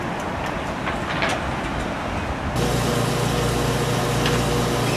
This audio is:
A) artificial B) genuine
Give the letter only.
B